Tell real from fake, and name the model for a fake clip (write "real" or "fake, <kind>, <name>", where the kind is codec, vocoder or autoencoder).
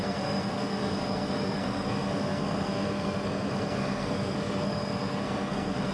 fake, codec, SNAC